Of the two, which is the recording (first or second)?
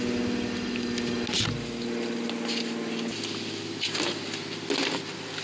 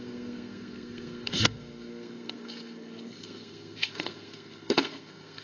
first